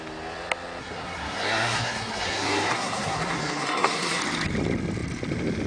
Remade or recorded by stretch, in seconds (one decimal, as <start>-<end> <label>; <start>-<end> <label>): 0.0-0.8 recorded; 0.8-4.2 remade; 4.2-5.7 recorded